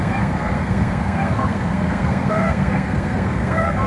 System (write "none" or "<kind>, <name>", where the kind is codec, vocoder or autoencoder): codec, SNAC